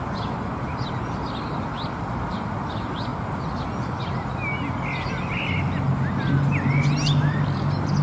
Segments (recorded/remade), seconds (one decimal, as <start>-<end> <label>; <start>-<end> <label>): 0.0-8.0 recorded